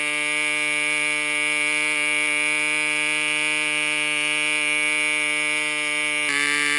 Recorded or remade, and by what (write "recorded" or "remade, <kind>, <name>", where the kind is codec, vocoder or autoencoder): recorded